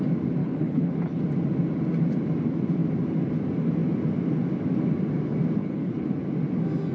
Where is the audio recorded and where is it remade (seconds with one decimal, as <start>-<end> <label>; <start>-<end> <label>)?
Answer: 0.0-0.4 recorded; 0.4-1.2 remade; 1.2-5.6 recorded; 5.6-6.1 remade; 6.1-6.9 recorded

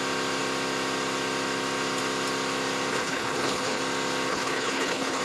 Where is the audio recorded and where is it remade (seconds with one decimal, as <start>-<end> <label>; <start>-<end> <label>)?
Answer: 0.0-2.9 recorded; 2.9-3.8 remade; 3.8-4.3 recorded; 4.3-5.2 remade